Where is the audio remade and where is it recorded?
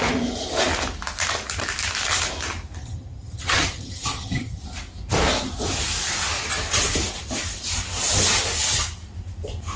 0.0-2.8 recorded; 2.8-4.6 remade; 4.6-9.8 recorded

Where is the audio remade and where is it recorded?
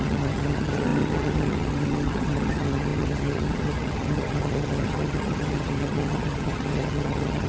0.0-7.5 remade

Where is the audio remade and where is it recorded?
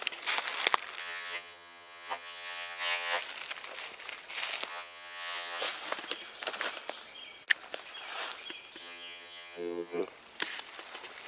0.0-1.0 recorded; 1.0-3.2 remade; 3.2-4.7 recorded; 4.7-5.6 remade; 5.6-8.8 recorded; 8.8-10.0 remade; 10.0-11.3 recorded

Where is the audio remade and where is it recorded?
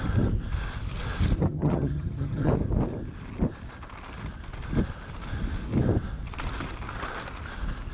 0.0-1.4 recorded; 1.4-2.5 remade; 2.5-7.9 recorded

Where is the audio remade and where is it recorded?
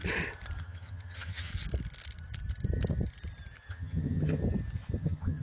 0.0-0.6 recorded; 0.6-1.5 remade; 1.5-3.7 recorded; 3.7-4.4 remade; 4.4-5.0 recorded; 5.0-5.4 remade